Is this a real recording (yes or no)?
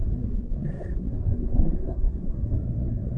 no